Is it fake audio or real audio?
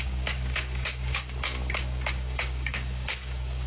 fake